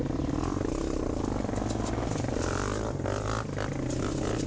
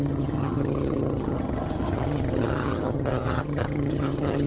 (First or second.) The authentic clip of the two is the first